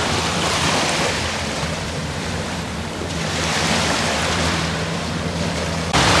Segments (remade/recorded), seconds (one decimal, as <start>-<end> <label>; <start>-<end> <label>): 0.0-6.2 remade